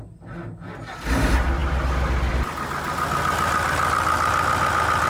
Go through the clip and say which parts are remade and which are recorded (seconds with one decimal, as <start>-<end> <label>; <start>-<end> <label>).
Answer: 0.0-5.1 recorded